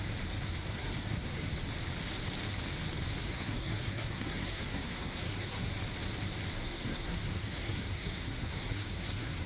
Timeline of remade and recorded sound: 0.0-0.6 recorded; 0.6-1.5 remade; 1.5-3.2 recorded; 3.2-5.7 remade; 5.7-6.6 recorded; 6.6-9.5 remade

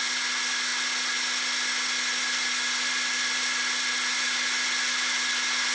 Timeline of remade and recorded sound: 0.0-5.7 recorded

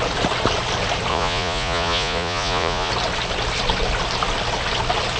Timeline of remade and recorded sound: 0.0-1.1 recorded; 1.1-2.9 remade; 2.9-5.2 recorded